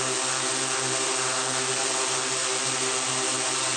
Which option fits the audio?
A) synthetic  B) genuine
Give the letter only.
B